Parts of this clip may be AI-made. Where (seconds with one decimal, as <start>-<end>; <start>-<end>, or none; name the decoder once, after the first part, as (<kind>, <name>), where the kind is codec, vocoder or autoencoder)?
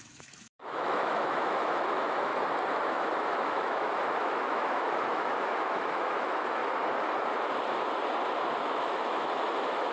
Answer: 0.0-2.3 (autoencoder, DAC-VAE); 2.9-6.6; 8.6-9.9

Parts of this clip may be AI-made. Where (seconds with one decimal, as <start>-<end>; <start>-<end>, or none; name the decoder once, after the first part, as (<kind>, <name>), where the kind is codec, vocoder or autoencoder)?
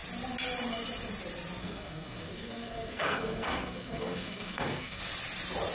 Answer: 1.6-5.0 (codec, SNAC)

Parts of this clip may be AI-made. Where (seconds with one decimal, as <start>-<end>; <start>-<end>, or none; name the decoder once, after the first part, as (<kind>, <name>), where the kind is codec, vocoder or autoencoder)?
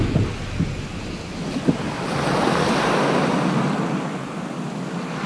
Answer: none